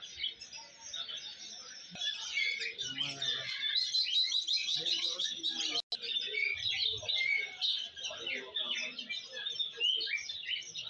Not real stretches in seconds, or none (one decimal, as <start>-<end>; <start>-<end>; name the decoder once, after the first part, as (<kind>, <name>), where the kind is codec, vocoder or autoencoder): 4.6-5.3 (vocoder, WaveNeXt)